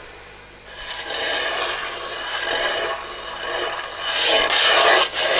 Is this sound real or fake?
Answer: real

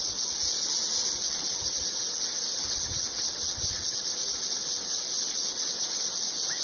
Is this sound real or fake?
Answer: real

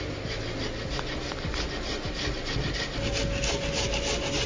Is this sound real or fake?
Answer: real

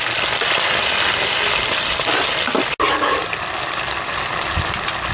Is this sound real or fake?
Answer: real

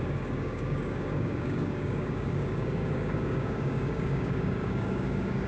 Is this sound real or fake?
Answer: fake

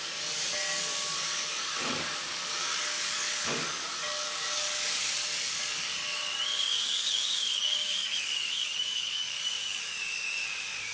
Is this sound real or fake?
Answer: fake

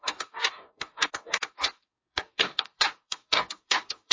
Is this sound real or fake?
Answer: fake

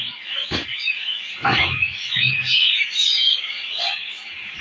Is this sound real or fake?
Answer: fake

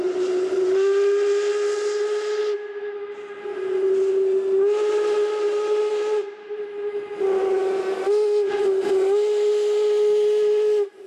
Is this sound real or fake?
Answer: real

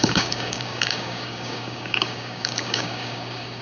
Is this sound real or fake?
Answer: fake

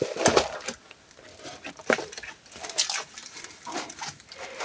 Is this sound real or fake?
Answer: real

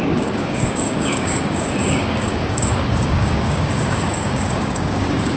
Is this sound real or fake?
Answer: fake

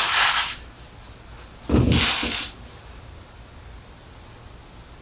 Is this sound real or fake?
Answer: real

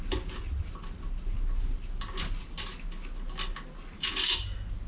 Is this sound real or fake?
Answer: real